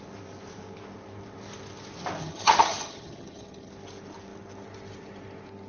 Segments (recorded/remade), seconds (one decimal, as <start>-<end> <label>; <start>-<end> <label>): 0.0-2.2 recorded; 2.2-3.7 remade; 3.7-5.7 recorded